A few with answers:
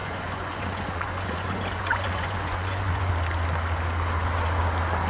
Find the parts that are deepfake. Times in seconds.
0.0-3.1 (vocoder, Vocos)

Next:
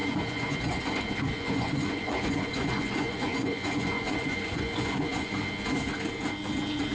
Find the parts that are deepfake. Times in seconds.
0.0-0.8 (vocoder, Vocos); 1.3-5.4

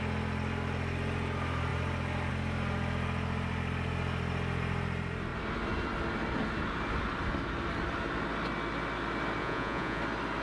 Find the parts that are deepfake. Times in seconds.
9.4-10.0 (vocoder, Vocos)

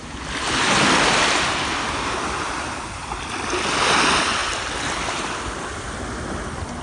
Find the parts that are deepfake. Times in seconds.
none

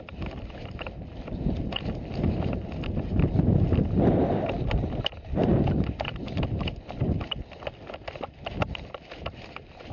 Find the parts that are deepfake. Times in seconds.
none